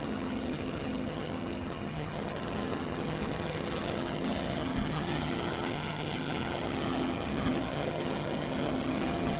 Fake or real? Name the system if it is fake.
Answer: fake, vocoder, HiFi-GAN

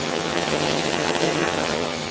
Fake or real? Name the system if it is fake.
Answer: fake, vocoder, HiFi-GAN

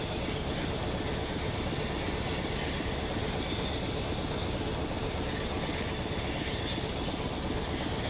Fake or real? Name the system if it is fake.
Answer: real